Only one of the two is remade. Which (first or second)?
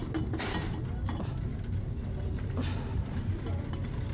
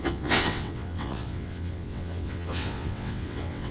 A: second